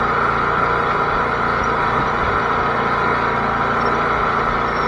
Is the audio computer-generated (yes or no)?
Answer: no